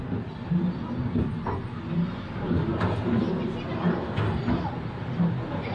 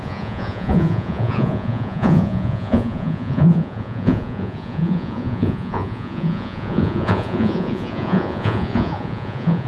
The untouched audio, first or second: first